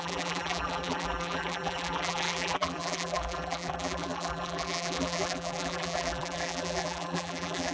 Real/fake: fake